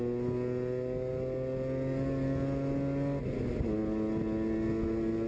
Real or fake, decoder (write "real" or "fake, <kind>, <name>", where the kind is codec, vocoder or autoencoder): real